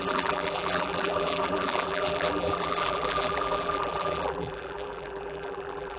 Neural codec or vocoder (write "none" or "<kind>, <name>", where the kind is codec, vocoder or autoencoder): vocoder, BigVGAN v2